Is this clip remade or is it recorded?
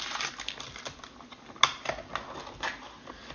recorded